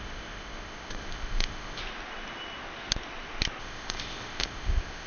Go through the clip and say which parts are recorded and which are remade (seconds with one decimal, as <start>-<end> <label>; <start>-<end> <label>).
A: 0.0-1.8 remade; 1.8-3.6 recorded; 3.6-5.1 remade